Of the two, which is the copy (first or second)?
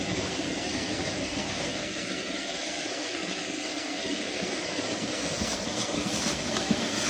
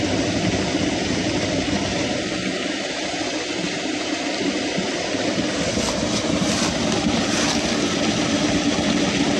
first